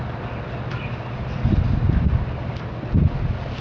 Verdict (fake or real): real